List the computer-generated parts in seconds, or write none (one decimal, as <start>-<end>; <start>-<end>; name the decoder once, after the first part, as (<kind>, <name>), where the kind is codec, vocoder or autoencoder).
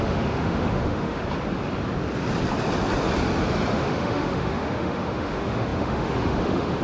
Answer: 0.0-1.2 (autoencoder, DAC-VAE); 3.7-6.8